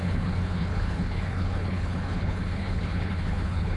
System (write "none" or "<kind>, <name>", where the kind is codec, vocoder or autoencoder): codec, HILCodec